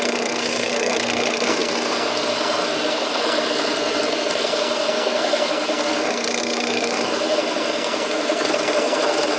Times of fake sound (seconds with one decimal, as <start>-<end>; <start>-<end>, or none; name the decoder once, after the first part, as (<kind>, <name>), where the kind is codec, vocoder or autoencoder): 0.0-9.4 (codec, SNAC)